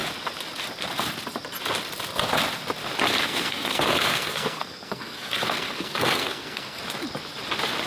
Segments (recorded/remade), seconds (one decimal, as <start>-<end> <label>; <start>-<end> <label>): 0.0-3.2 recorded; 3.2-6.8 remade; 6.8-7.9 recorded